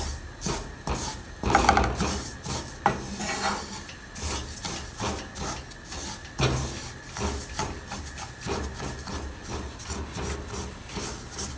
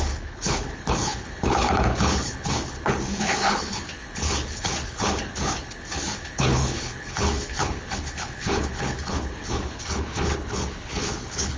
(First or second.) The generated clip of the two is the second